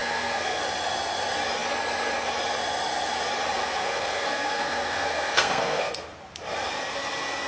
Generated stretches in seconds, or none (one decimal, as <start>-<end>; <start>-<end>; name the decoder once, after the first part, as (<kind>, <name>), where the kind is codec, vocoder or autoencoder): 0.0-0.6 (codec, SNAC); 3.6-5.9